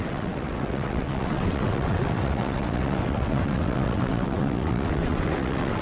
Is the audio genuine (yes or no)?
no